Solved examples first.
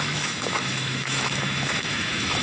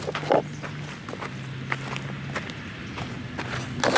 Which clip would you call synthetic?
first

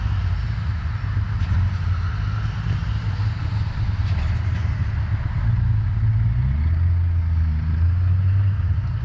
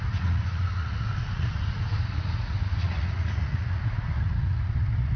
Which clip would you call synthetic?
second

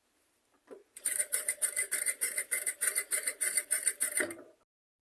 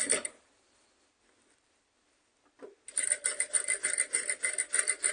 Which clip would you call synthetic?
first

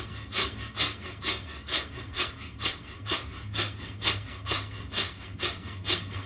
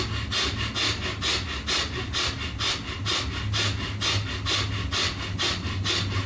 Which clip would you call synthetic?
first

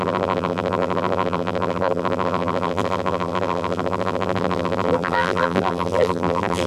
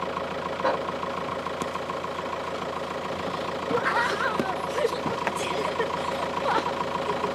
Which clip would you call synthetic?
first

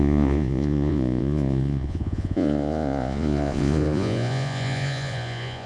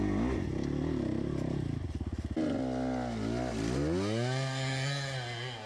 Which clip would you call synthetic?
first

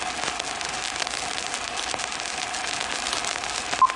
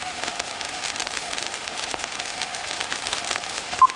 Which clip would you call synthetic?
second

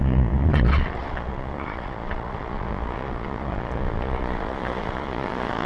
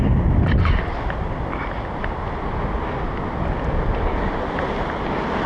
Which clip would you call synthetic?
first